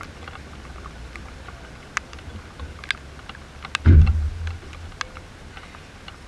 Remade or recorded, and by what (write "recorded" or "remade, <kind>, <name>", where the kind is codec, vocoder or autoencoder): recorded